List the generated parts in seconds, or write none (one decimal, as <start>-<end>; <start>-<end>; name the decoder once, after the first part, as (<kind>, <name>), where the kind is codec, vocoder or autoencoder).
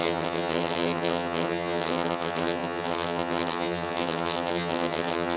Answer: 0.0-5.4 (vocoder, HiFi-GAN)